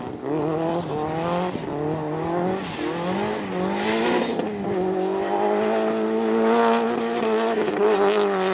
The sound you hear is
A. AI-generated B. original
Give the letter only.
B